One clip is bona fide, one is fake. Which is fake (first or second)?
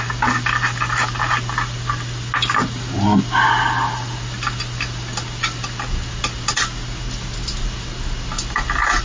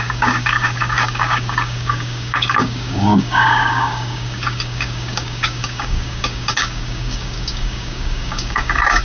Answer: second